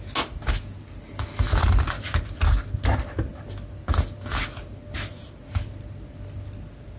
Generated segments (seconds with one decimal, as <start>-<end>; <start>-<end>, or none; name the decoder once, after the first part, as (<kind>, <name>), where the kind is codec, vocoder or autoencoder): none